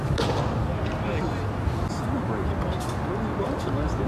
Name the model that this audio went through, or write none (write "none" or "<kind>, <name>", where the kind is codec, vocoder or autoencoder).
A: none